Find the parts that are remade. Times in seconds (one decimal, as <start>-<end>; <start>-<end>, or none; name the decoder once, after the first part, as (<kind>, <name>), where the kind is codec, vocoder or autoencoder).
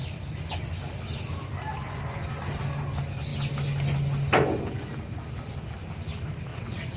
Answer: 6.5-7.0 (vocoder, WaveNeXt)